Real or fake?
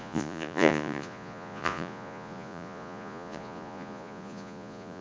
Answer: fake